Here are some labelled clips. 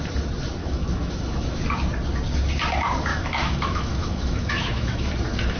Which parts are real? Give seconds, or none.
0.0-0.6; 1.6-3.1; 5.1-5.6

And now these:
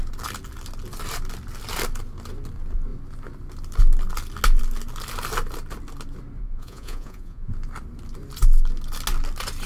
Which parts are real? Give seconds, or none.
0.0-6.4; 7.5-9.7

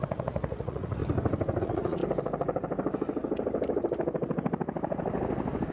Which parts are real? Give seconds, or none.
1.0-1.6; 2.0-5.7

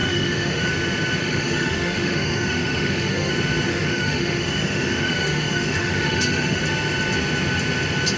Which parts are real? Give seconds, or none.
0.7-1.2; 3.3-3.7; 6.6-8.2